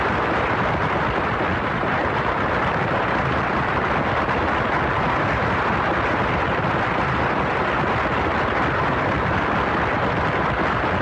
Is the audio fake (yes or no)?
no